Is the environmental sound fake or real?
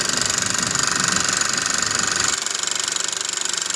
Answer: real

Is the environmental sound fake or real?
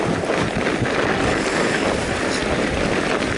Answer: real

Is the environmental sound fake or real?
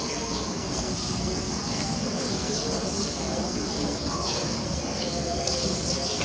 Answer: fake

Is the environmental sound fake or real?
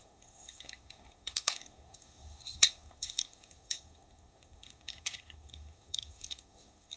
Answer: fake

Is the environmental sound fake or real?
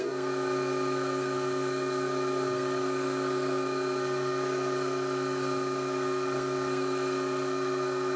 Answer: fake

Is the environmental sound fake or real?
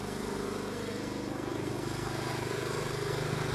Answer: fake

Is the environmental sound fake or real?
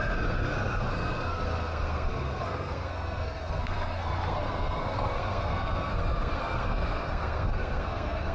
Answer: fake